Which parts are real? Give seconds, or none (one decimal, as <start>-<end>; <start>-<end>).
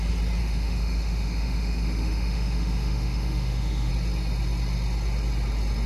0.0-0.4; 3.9-5.9